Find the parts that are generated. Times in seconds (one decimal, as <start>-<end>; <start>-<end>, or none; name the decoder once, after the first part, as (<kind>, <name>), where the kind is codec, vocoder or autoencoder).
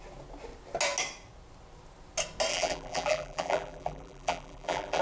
2.5-5.0 (vocoder, BigVGAN v2)